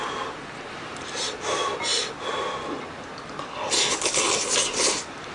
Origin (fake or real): real